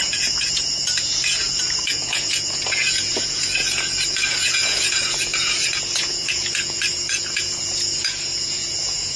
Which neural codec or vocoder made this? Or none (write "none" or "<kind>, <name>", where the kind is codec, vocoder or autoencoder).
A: vocoder, Vocos